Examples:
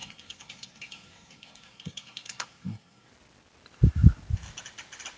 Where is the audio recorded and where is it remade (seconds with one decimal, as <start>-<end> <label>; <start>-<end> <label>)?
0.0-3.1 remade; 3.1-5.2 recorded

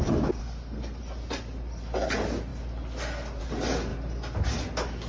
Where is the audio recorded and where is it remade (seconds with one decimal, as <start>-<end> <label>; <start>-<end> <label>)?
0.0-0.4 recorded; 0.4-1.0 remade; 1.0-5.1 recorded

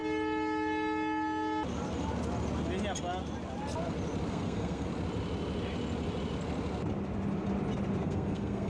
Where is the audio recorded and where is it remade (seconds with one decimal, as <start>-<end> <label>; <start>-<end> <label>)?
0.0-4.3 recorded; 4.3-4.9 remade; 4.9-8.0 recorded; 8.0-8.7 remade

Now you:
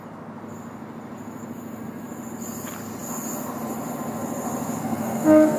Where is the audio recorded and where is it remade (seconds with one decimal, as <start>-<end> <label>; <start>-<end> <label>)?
0.0-4.8 recorded; 4.8-5.6 remade

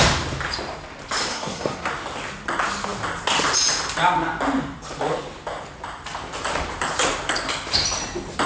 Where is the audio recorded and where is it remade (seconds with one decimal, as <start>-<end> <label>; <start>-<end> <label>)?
0.0-1.3 recorded; 1.3-1.9 remade; 1.9-8.5 recorded

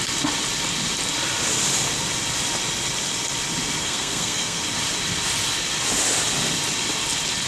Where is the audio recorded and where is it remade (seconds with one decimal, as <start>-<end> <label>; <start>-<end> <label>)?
0.0-3.8 recorded; 3.8-4.6 remade; 4.6-7.5 recorded

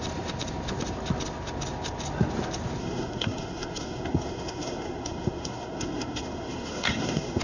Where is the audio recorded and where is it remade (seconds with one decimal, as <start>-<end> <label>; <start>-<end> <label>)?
0.0-2.8 recorded; 2.8-7.4 remade